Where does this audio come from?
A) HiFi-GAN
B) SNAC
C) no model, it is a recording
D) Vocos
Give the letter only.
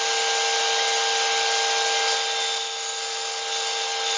C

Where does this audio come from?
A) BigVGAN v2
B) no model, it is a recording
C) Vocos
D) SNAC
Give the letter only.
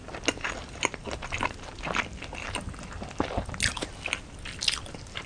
B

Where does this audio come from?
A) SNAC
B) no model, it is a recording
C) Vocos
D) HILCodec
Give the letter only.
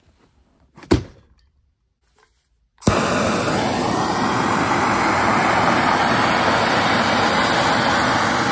B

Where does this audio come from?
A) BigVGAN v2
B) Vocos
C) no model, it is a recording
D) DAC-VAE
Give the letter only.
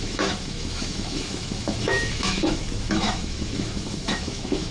D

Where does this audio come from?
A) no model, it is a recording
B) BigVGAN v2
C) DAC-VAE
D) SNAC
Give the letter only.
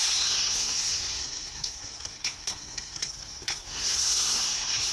D